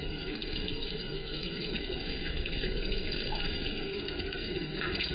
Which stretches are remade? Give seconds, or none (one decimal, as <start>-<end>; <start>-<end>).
0.0-5.1